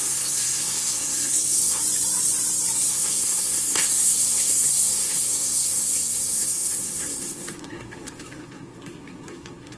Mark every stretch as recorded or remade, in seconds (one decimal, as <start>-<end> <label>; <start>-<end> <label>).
0.0-1.8 remade; 1.8-2.8 recorded; 2.8-9.8 remade